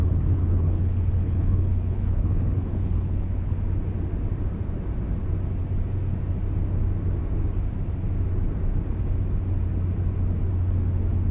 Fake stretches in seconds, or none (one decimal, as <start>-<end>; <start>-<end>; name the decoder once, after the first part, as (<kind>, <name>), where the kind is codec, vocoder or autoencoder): 0.0-3.6 (codec, HILCodec)

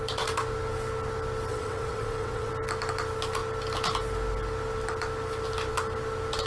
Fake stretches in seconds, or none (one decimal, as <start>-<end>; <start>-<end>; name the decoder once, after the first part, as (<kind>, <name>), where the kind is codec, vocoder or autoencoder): 1.5-2.5 (vocoder, WaveNeXt)

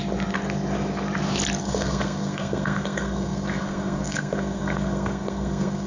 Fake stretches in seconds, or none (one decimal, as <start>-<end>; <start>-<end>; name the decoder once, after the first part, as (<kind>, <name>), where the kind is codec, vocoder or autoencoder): 1.6-5.9 (codec, SNAC)

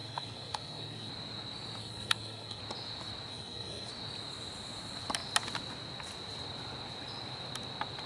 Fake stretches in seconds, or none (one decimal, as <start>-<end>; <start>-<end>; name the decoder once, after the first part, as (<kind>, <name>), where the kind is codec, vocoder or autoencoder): 0.0-1.1 (codec, SNAC); 1.8-2.6; 3.3-3.9

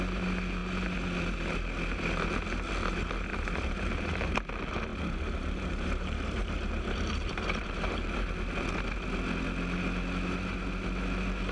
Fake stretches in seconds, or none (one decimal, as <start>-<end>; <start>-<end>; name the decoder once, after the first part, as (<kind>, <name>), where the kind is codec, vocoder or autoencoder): 3.3-4.3 (vocoder, BigVGAN v2); 4.9-8.3